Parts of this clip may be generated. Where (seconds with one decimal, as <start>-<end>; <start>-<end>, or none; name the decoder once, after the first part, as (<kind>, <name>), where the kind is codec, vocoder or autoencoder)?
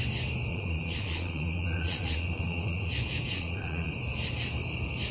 0.5-2.9 (vocoder, Vocos); 3.3-3.9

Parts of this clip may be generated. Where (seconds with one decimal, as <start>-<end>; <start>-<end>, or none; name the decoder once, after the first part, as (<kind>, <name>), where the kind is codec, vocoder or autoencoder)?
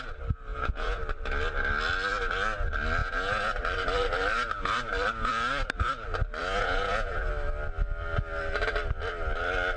0.5-1.0 (vocoder, Vocos); 3.0-3.5; 6.4-7.3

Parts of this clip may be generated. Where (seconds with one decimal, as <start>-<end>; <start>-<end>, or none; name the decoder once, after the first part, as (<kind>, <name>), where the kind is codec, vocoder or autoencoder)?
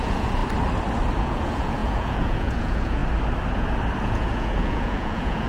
0.0-0.4 (vocoder, Vocos); 1.2-3.0; 4.0-5.5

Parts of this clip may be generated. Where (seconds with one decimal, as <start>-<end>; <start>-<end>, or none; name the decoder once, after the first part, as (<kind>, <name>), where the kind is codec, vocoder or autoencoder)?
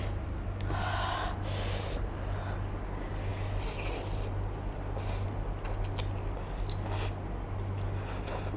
none